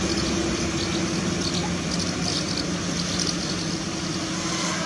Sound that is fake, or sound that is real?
real